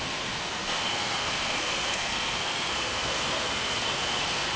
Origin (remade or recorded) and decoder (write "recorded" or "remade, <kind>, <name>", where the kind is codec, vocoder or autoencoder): remade, codec, SNAC